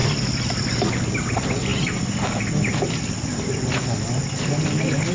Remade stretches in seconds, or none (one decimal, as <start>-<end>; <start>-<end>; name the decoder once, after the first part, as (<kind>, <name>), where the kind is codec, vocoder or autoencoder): none